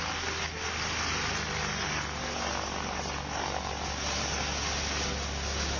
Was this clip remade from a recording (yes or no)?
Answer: no